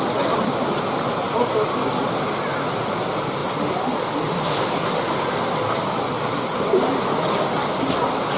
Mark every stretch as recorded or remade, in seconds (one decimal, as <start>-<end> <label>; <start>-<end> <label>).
0.0-8.4 recorded